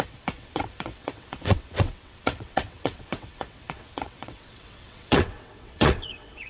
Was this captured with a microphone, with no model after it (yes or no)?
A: no